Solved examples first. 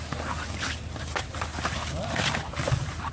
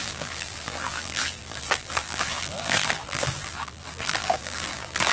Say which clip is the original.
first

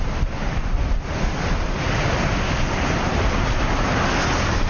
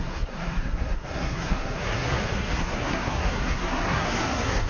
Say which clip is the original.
first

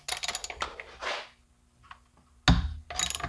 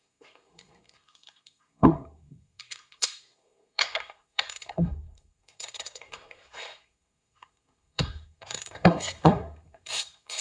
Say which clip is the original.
first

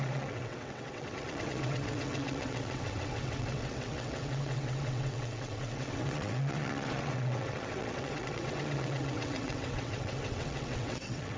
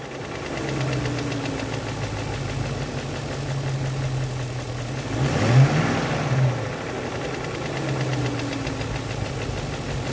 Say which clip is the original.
second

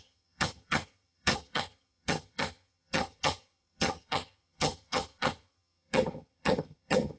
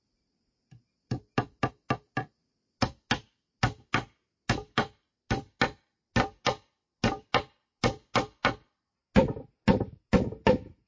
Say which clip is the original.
second